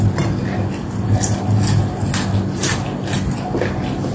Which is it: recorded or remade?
recorded